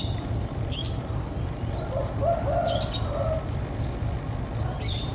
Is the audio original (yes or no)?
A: yes